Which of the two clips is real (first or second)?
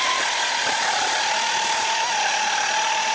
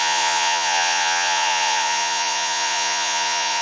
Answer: first